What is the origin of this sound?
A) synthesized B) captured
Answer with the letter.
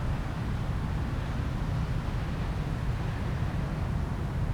B